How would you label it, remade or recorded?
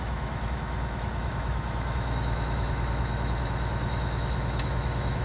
remade